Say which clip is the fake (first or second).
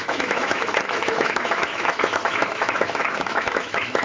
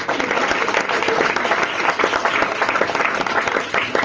first